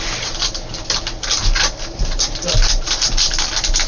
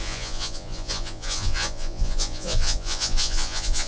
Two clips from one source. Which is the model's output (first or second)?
second